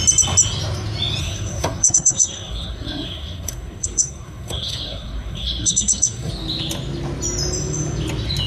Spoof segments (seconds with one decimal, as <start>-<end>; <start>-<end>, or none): 1.2-6.3